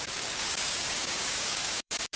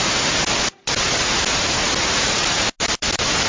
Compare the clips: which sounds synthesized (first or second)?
first